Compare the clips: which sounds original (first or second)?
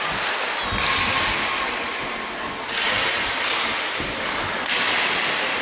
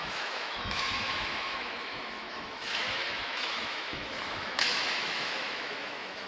first